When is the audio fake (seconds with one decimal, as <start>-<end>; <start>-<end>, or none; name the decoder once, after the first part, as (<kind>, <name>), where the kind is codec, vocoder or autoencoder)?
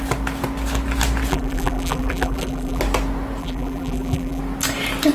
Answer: 1.3-2.8 (vocoder, BigVGAN v2); 3.4-4.4